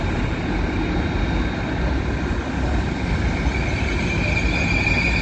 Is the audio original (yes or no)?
yes